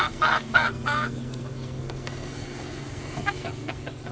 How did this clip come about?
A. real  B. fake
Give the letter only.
B